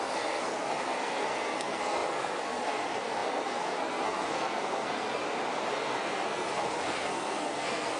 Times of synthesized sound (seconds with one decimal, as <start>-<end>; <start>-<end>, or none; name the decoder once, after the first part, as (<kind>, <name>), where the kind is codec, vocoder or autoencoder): 0.0-5.2 (codec, SNAC); 5.7-8.0